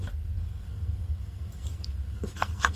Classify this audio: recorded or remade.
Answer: remade